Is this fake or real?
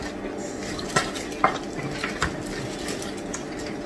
real